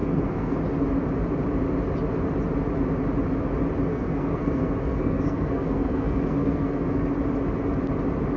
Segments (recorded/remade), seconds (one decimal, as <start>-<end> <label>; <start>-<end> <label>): 0.0-0.6 remade; 0.6-3.9 recorded; 3.9-7.1 remade; 7.1-8.4 recorded